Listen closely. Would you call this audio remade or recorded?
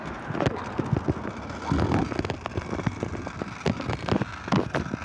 recorded